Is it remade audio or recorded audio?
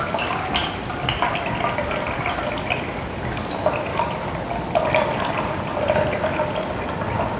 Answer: recorded